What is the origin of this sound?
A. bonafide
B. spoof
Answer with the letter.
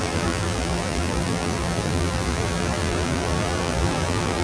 B